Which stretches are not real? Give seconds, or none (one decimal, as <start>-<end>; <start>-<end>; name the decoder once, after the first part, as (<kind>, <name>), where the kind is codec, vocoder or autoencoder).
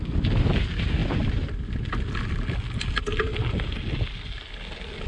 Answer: none